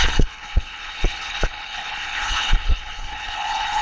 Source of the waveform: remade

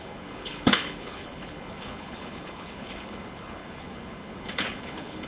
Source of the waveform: remade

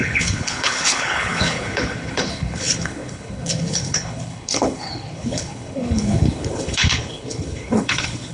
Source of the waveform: remade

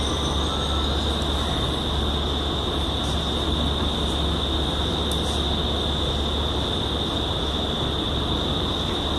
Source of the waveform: recorded